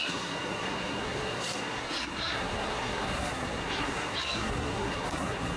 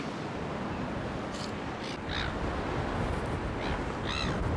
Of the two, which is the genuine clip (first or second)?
second